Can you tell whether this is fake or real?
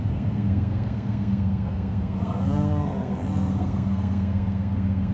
fake